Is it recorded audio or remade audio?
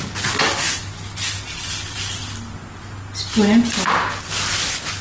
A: recorded